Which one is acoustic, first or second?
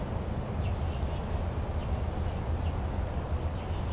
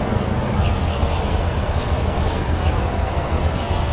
first